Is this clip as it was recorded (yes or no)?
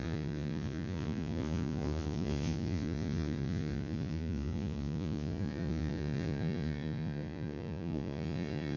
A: no